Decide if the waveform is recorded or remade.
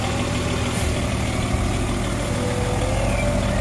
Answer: recorded